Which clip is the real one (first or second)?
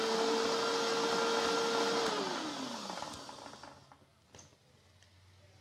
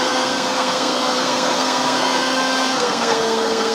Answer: first